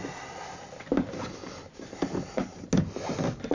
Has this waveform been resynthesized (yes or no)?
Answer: no